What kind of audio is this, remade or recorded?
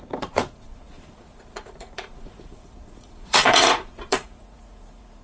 remade